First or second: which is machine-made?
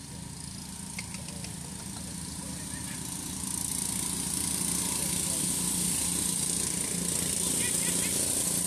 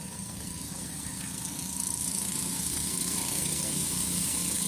second